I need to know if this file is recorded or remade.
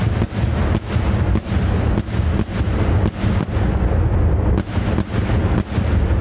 recorded